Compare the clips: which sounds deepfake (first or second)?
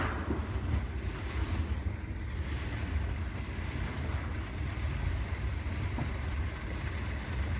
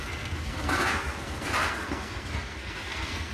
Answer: second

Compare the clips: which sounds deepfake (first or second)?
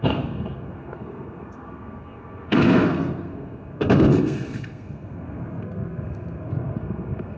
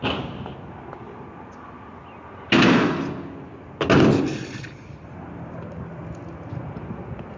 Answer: first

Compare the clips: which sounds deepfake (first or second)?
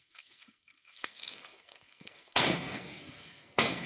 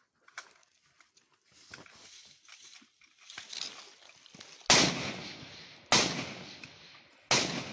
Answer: first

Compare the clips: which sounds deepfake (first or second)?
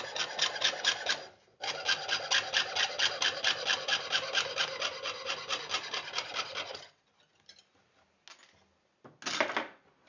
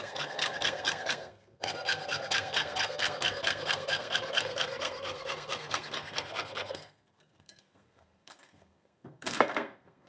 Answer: second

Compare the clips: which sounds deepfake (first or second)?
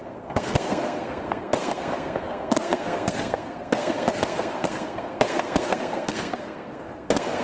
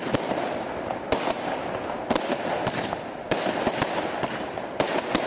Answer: first